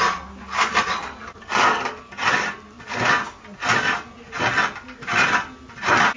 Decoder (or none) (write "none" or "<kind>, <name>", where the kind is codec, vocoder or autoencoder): none